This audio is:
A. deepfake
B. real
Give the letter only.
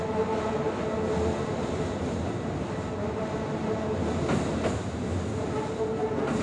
B